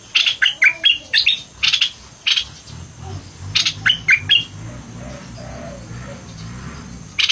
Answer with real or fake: real